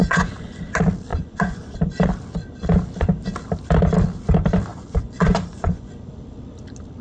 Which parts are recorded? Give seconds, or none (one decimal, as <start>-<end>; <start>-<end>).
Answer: 0.6-1.1; 1.8-4.7; 5.9-7.0